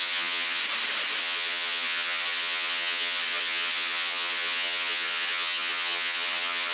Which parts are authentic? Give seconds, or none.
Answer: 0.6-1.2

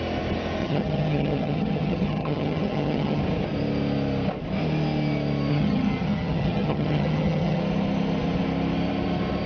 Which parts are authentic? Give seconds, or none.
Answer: 0.0-0.6; 3.2-5.5; 7.6-9.5

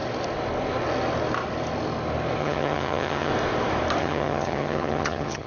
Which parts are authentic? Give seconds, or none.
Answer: 0.0-2.4; 3.3-4.0

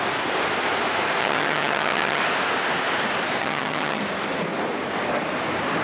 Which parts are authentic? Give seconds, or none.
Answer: 0.0-1.2; 2.2-3.4; 4.0-5.8

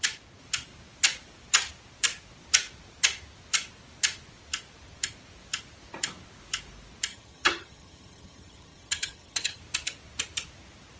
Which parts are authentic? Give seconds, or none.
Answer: 0.0-7.1; 9.6-11.0